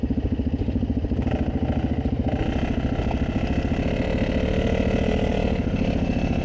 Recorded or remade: recorded